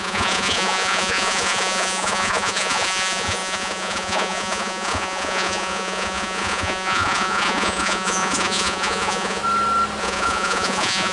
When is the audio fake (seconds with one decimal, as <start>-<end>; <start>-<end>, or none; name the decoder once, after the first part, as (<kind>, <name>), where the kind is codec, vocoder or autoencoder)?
0.0-9.4 (vocoder, Vocos); 10.0-11.1